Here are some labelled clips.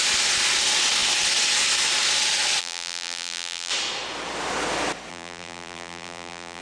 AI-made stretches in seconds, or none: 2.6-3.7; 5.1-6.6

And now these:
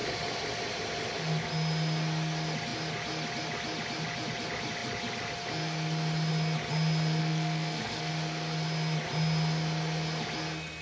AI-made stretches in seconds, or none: 7.2-8.1

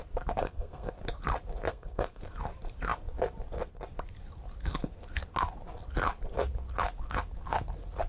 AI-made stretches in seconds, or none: 0.4-0.9; 1.7-2.2

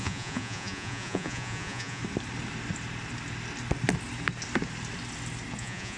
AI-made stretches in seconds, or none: 0.0-2.0; 5.6-6.0

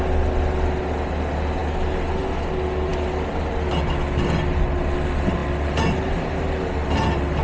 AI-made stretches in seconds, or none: none

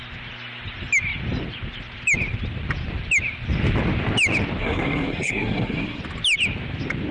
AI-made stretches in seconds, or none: 4.6-6.0